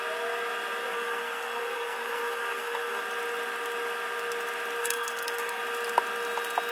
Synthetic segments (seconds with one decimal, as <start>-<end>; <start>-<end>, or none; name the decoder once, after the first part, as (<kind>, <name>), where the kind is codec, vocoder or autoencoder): 0.9-3.0 (codec, SNAC); 4.8-5.6